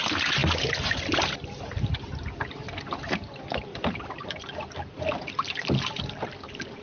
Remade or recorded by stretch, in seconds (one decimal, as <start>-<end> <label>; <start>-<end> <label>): 0.0-6.8 recorded